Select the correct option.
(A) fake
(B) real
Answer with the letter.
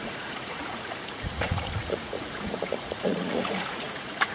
A